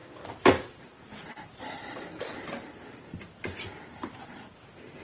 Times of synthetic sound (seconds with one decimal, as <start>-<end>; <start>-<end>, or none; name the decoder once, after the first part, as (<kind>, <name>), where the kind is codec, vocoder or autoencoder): 0.0-5.0 (vocoder, BigVGAN v2)